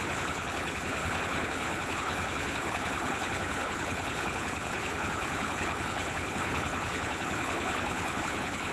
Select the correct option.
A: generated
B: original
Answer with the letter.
A